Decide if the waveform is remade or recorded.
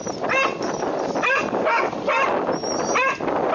recorded